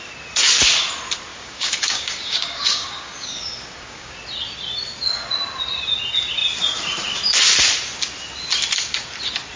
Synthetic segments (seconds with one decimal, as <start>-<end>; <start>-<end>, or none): 1.3-4.2